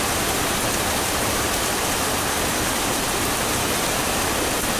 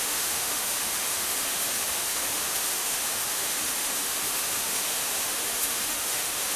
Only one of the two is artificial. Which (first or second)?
second